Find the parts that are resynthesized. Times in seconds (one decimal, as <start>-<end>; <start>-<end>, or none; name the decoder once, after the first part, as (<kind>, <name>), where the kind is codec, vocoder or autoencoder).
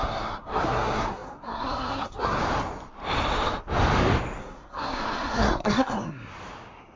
0.0-2.4 (codec, SNAC); 4.4-6.3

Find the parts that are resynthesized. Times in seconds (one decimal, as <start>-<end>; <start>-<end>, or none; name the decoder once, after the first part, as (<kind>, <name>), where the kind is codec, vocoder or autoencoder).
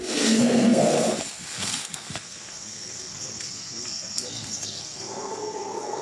0.0-6.0 (codec, SNAC)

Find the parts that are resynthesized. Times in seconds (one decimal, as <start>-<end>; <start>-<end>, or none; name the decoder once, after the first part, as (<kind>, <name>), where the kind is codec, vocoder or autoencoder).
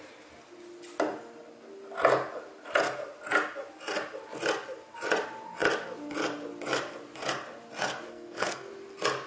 8.1-8.7 (codec, SNAC)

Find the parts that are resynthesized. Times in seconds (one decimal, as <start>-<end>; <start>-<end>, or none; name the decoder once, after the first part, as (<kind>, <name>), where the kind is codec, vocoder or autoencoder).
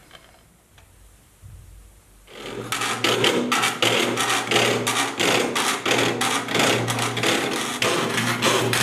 none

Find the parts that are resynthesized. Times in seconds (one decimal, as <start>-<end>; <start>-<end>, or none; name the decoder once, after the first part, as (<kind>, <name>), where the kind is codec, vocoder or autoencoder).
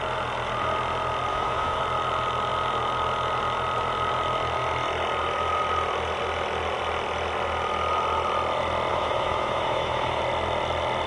1.3-1.8 (autoencoder, DAC-VAE); 8.9-10.2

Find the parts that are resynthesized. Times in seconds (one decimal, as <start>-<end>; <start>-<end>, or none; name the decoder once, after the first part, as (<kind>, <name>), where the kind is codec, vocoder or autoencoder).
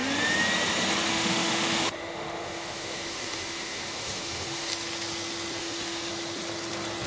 1.1-4.7 (autoencoder, DAC-VAE); 5.6-6.1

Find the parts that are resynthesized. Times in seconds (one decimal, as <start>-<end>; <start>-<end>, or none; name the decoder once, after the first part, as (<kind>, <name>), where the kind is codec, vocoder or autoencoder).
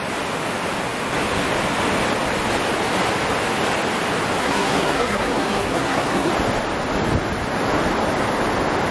4.4-6.3 (codec, SNAC)